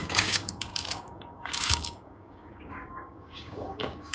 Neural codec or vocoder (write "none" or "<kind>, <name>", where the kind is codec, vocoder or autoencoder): codec, DAC